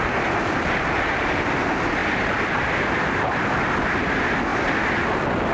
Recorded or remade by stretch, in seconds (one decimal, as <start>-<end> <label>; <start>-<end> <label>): 0.0-5.5 recorded